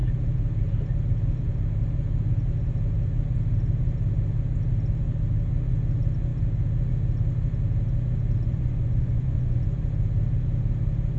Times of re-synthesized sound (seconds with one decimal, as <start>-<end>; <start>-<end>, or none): 8.5-9.6